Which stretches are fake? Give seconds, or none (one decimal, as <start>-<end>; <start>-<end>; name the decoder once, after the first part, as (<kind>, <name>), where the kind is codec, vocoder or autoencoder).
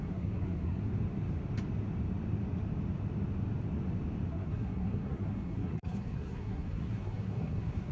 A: 0.0-0.9 (codec, SNAC); 4.3-7.9